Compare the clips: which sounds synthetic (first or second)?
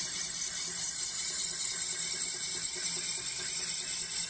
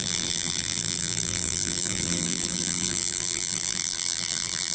second